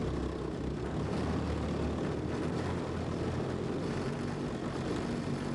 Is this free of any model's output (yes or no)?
yes